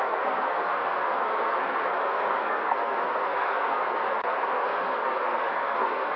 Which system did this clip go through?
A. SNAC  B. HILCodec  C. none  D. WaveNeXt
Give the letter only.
A